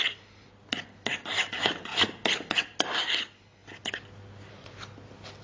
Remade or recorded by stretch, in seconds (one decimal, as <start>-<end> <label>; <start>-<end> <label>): 0.0-5.4 recorded